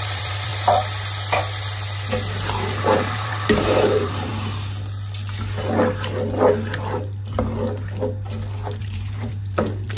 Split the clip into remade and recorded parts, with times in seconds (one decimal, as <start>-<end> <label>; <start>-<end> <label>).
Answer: 0.0-0.5 remade; 0.5-2.8 recorded; 2.8-4.3 remade; 4.3-8.8 recorded; 8.8-10.0 remade